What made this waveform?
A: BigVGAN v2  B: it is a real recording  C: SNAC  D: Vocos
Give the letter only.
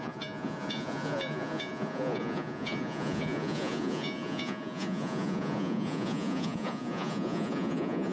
D